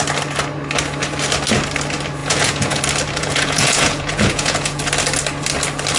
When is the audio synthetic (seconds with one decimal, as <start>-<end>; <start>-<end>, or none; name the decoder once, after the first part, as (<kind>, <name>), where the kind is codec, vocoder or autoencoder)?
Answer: 2.2-2.8 (vocoder, Vocos); 3.2-4.8

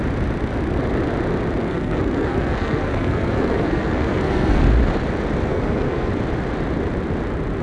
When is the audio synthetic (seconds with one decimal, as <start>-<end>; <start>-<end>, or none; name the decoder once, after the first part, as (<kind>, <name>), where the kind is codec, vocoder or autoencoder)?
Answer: 1.6-4.6 (codec, SNAC); 5.5-6.1